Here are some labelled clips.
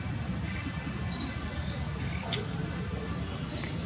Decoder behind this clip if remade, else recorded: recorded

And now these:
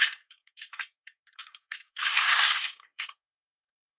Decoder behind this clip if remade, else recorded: remade, codec, SNAC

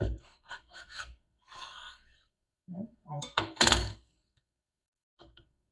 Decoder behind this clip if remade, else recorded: remade, codec, SNAC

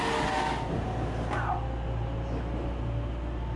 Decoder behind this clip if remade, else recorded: recorded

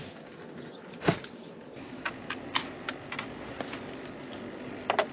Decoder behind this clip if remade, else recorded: recorded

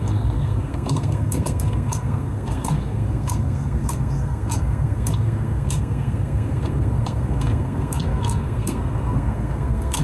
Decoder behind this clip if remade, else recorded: remade, codec, SNAC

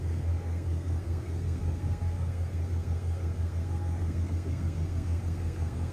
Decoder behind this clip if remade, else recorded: remade, codec, SNAC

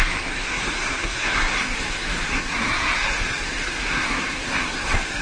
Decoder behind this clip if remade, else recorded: remade, codec, SNAC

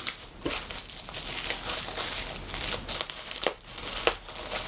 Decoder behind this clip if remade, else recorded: recorded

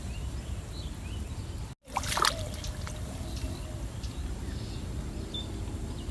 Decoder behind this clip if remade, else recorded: recorded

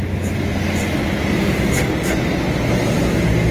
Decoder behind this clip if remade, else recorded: recorded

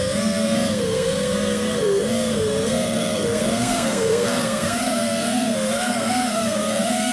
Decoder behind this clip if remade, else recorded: remade, codec, SNAC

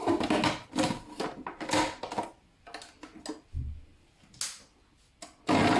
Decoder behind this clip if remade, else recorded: recorded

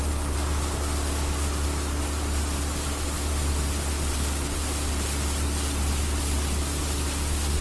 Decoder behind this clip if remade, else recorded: recorded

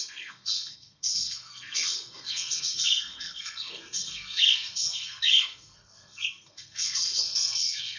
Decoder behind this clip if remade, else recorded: remade, codec, SNAC